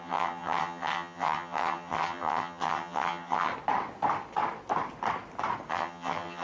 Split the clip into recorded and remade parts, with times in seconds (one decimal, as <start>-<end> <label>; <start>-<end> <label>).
0.0-3.5 remade; 3.5-5.7 recorded; 5.7-6.4 remade